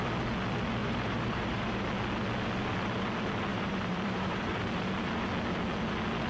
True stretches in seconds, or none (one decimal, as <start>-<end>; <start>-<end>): 0.0-0.8; 1.8-3.5; 4.5-6.3